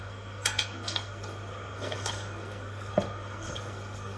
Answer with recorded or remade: remade